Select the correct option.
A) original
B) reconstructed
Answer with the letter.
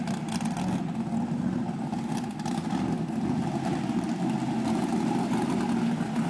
A